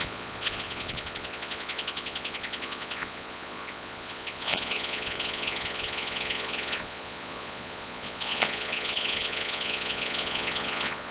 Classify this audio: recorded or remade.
remade